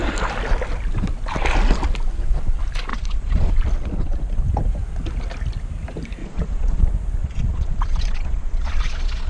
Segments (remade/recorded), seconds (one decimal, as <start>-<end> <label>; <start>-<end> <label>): 0.0-2.9 recorded; 2.9-3.5 remade; 3.5-6.2 recorded; 6.2-6.8 remade; 6.8-7.2 recorded; 7.2-9.3 remade